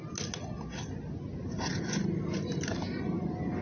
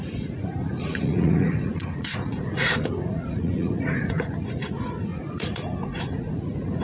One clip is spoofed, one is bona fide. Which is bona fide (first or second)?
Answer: first